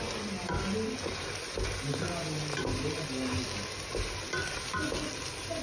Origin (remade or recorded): recorded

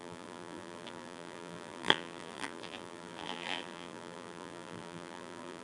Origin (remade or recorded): remade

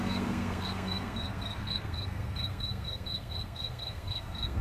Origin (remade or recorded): remade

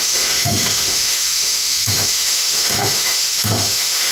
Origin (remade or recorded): remade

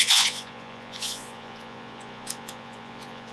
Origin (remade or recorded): remade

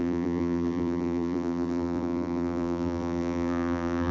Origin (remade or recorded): remade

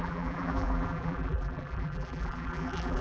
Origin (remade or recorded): remade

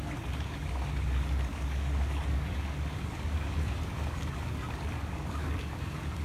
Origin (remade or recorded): remade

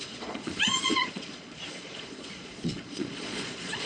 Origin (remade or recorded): remade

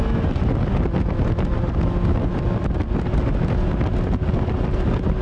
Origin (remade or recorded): recorded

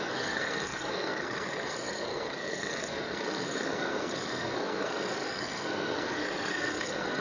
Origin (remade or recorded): remade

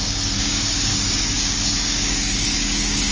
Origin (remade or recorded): remade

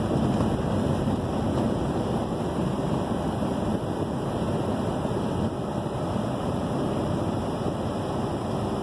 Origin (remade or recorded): recorded